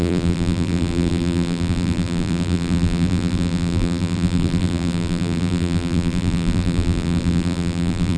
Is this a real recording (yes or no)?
no